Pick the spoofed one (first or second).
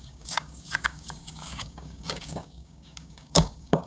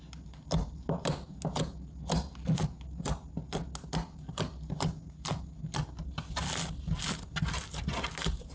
first